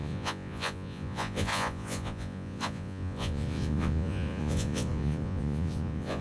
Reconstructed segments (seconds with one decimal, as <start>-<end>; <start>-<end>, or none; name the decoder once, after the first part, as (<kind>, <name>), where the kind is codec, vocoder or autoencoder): 0.0-6.2 (vocoder, Vocos)